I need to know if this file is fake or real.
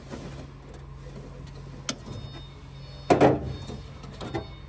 real